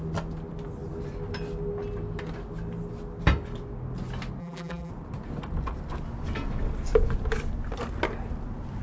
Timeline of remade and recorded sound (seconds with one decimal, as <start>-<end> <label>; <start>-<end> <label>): 0.0-4.4 recorded; 4.4-4.9 remade; 4.9-8.8 recorded